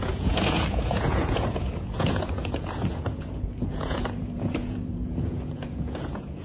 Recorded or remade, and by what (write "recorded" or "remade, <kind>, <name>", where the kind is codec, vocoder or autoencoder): remade, vocoder, Vocos